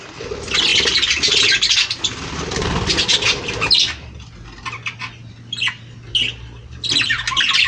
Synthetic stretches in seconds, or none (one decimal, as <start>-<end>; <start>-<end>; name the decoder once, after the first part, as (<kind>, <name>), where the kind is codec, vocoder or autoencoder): none